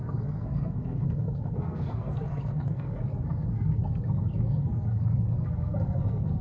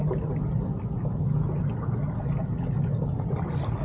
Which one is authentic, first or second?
second